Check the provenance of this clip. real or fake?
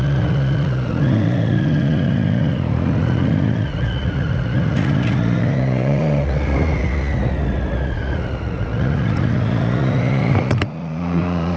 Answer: fake